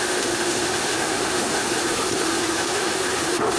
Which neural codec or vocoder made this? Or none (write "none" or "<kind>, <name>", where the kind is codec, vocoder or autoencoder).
autoencoder, DAC-VAE